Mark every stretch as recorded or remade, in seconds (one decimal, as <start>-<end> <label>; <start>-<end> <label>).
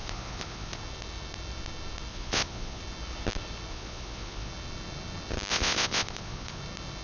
0.0-0.8 remade; 0.8-2.1 recorded; 2.1-2.8 remade; 2.8-3.7 recorded; 3.7-4.5 remade; 4.5-5.5 recorded; 5.5-6.6 remade; 6.6-7.0 recorded